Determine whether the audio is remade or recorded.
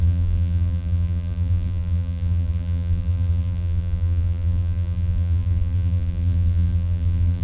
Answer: remade